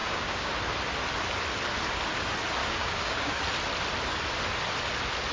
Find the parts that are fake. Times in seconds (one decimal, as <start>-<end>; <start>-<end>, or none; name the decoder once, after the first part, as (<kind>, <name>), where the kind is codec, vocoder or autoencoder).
0.0-0.5 (codec, DAC); 2.6-3.4